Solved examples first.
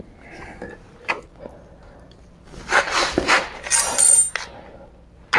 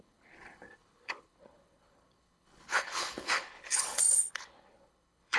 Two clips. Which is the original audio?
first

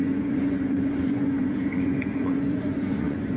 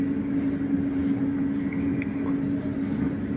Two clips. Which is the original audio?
second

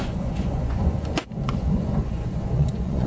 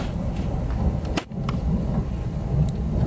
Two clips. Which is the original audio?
second